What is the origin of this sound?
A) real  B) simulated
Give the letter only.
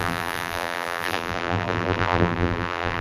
B